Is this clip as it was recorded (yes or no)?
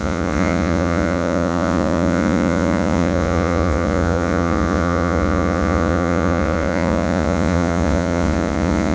no